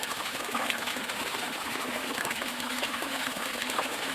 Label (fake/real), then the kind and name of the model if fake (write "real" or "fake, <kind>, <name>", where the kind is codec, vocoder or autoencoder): fake, autoencoder, DAC-VAE